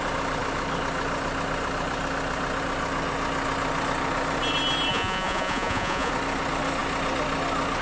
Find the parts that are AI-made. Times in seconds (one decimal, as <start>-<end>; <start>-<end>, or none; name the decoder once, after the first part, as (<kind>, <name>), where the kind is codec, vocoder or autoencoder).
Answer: 4.9-6.1 (vocoder, Vocos)